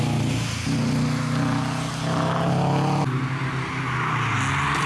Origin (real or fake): real